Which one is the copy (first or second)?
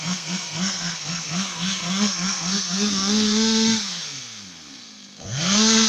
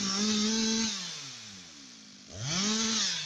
first